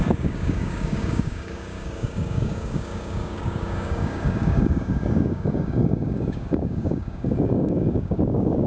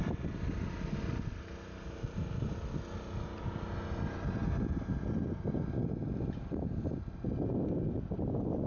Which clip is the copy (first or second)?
first